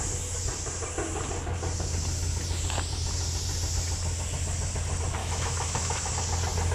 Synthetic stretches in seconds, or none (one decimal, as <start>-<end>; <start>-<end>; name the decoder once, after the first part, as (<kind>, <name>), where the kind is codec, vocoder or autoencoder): 5.2-6.1 (autoencoder, DAC-VAE)